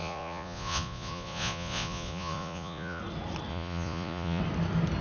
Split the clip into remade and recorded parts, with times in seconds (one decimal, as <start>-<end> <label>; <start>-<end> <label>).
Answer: 0.0-3.0 remade; 3.0-3.5 recorded; 3.5-4.4 remade; 4.4-5.0 recorded